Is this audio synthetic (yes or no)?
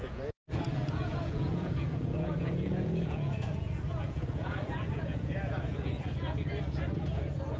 yes